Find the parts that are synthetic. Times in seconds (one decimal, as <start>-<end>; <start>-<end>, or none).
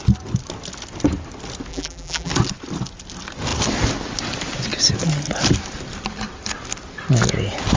1.7-2.3